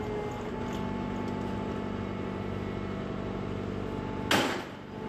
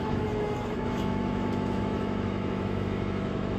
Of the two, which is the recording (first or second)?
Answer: first